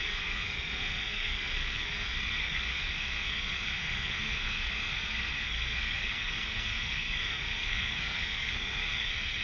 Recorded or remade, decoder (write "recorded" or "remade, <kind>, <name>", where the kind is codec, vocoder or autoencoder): remade, codec, SNAC